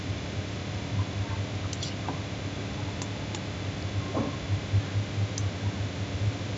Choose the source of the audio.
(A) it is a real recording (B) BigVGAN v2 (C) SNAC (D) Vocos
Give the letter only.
A